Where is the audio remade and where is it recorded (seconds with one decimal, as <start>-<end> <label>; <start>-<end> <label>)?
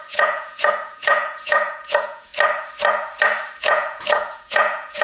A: 0.0-2.3 remade; 2.3-3.6 recorded; 3.6-5.0 remade